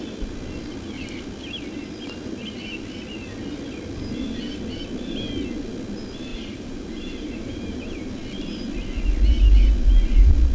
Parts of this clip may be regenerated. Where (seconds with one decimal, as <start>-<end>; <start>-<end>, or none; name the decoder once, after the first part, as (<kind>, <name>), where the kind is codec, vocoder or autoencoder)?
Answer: 6.3-8.1 (vocoder, BigVGAN v2)